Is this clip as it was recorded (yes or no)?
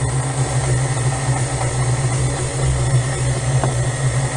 yes